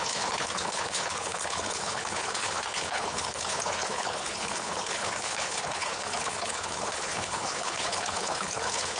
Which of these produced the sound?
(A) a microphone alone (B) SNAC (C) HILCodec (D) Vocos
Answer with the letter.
C